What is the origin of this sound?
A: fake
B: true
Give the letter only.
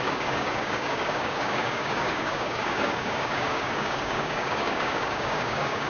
A